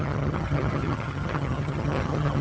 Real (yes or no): no